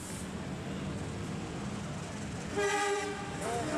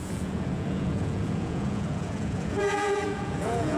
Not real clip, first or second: second